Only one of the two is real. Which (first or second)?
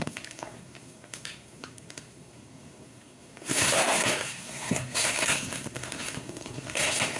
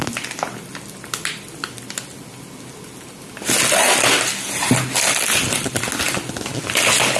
second